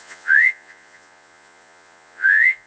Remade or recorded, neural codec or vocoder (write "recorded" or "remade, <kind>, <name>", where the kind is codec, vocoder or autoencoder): remade, vocoder, Vocos